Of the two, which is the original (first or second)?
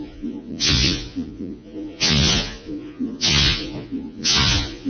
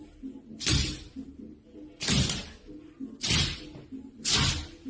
second